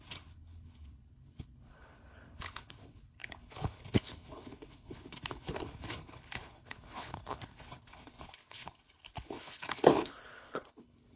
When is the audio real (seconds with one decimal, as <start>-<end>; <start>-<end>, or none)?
none